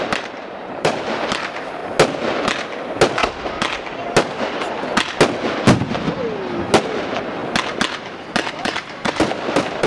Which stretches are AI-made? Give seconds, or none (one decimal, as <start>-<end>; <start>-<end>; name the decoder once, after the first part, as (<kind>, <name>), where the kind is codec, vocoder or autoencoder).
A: 0.0-1.8 (vocoder, BigVGAN v2); 6.8-7.4; 8.5-9.9

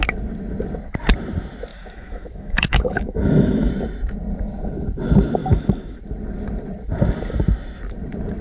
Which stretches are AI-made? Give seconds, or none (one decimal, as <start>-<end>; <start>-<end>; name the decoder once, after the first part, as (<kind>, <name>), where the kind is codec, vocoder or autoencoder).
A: 1.7-3.7 (autoencoder, DAC-VAE); 5.4-6.0

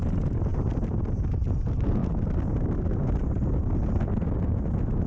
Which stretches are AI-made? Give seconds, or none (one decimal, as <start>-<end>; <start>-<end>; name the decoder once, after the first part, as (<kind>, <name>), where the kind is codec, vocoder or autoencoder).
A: none

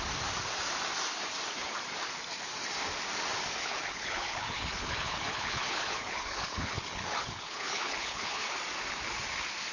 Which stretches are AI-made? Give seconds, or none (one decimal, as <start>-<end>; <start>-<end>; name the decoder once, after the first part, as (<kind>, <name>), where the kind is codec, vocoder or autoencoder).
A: 3.6-8.6 (codec, HILCodec)

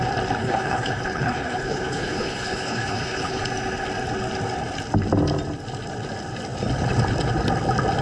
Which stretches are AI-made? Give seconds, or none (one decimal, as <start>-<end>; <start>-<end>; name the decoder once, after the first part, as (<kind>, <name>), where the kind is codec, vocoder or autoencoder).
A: 0.4-3.4 (codec, HILCodec)

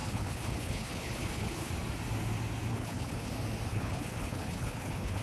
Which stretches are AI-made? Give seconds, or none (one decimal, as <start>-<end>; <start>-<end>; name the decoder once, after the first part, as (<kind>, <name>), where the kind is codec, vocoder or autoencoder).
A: 0.0-1.7 (codec, HILCodec); 2.7-3.3; 3.7-5.2

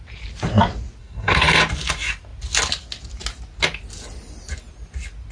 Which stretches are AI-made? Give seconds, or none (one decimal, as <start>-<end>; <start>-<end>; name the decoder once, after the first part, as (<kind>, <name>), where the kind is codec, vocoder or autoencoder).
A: 1.0-1.6 (codec, SNAC)